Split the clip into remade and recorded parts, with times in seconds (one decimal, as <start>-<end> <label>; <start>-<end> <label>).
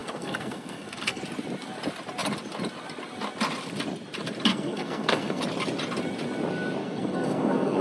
0.0-1.2 remade; 1.2-4.5 recorded; 4.5-5.4 remade; 5.4-6.8 recorded; 6.8-7.8 remade